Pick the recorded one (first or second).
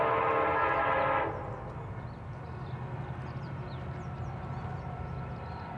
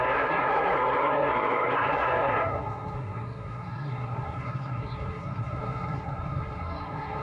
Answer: first